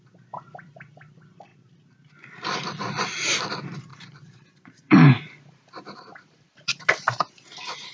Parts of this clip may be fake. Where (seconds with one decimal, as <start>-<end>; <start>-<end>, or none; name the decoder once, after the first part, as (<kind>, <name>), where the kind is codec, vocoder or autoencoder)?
3.9-6.9 (vocoder, BigVGAN v2)